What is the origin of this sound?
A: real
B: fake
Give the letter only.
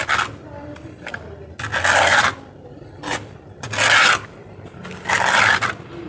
A